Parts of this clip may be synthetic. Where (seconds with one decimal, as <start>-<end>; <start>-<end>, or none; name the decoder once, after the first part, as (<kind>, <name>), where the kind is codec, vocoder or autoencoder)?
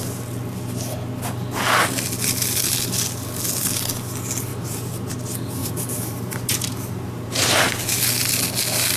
4.5-5.1 (vocoder, BigVGAN v2); 5.6-7.6